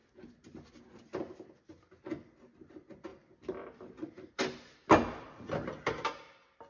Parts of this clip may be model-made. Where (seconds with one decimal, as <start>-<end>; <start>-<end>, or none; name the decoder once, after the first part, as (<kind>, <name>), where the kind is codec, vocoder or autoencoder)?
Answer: none